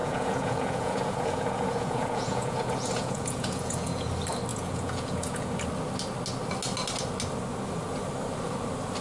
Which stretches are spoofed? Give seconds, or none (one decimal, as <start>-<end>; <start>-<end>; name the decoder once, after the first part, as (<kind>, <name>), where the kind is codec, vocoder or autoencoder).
0.0-4.1 (vocoder, Vocos); 4.5-5.5